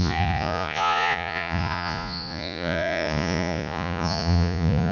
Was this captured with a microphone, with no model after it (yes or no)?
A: no